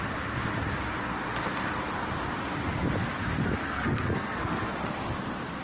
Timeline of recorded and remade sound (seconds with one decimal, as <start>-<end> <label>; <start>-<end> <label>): 0.0-3.6 recorded; 3.6-4.7 remade; 4.7-5.6 recorded